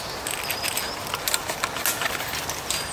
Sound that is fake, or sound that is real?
real